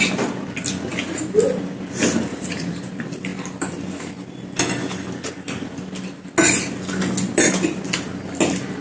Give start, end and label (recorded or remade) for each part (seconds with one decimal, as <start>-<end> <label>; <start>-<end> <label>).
0.0-2.3 recorded; 2.3-2.8 remade; 2.8-8.8 recorded